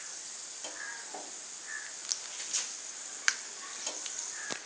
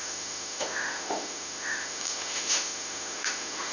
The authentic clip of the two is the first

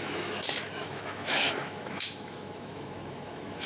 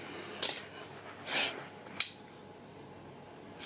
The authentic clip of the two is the second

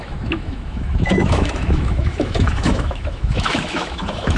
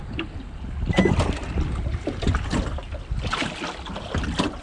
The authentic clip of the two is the second